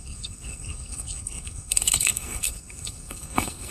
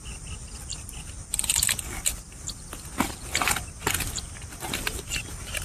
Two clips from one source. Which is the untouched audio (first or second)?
second